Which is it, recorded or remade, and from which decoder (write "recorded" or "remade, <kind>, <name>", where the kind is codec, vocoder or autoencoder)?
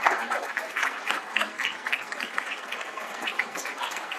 remade, codec, SNAC